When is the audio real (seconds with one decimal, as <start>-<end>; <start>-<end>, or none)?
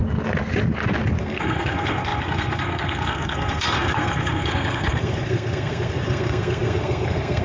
0.0-1.2